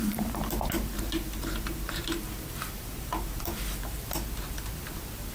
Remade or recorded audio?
remade